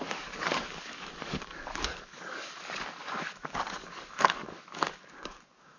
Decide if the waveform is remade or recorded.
remade